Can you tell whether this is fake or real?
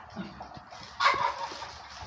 real